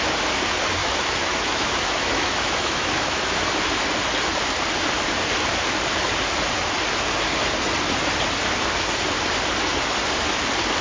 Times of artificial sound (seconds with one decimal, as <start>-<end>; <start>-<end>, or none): 0.8-3.4